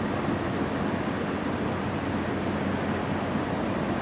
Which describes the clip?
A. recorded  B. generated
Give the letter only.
A